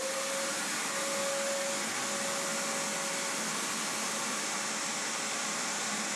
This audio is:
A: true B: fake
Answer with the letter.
A